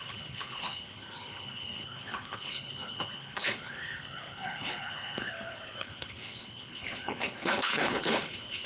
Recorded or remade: remade